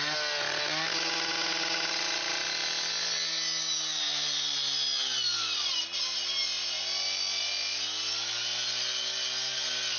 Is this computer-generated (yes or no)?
no